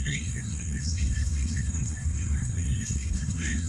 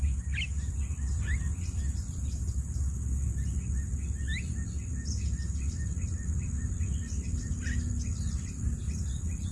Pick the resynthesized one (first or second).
first